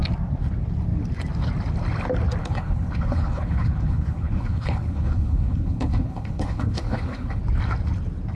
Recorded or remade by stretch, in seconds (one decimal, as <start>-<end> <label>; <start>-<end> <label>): 0.0-2.4 recorded; 2.4-7.4 remade; 7.4-8.3 recorded